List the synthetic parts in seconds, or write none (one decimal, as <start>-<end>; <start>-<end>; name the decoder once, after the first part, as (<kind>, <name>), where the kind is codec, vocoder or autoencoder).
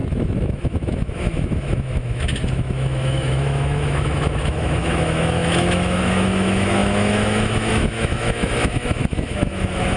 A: 0.0-10.0 (autoencoder, DAC-VAE)